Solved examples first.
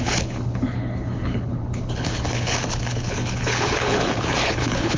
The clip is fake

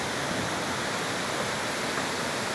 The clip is real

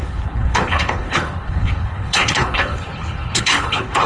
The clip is fake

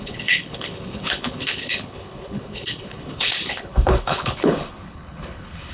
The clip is fake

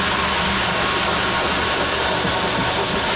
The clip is real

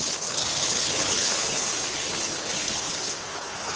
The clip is fake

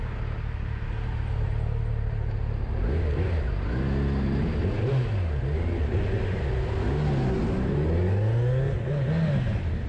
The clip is real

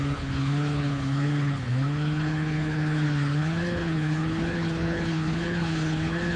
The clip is fake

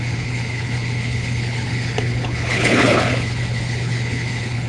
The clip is fake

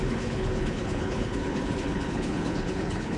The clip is fake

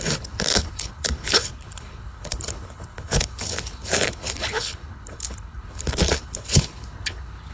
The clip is fake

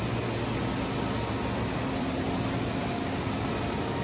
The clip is real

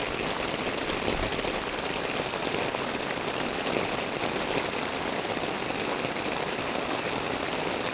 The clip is real